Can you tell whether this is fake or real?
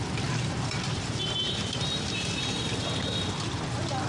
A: fake